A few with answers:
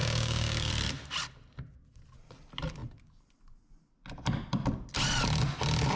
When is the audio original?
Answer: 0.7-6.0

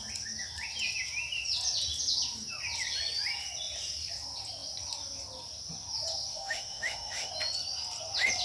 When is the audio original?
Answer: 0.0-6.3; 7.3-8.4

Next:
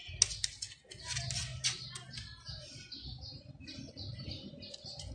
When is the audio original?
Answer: 0.0-5.1

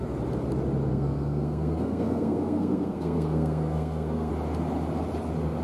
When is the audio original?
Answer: 0.0-0.9; 4.3-5.6

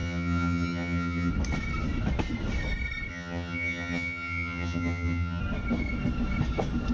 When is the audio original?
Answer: 1.3-3.1; 5.4-6.9